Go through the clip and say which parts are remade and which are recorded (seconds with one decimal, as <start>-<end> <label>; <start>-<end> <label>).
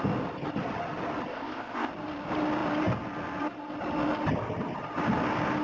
0.0-1.3 recorded; 1.3-1.9 remade; 1.9-5.6 recorded